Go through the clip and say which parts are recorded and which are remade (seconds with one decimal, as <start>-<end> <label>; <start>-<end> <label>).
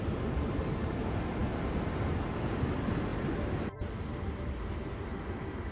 0.0-5.7 recorded